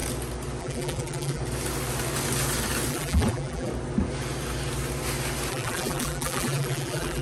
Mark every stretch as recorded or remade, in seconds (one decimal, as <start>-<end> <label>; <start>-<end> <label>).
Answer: 0.0-0.6 recorded; 0.6-1.4 remade; 1.4-2.9 recorded; 2.9-3.7 remade; 3.7-5.5 recorded; 5.5-7.2 remade